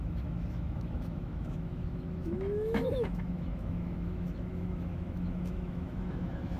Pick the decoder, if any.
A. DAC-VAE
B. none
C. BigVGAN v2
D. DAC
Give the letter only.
A